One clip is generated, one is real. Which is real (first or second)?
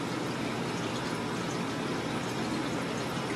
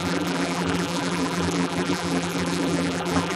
first